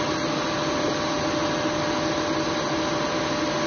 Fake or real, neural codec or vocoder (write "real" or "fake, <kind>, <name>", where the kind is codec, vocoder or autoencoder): real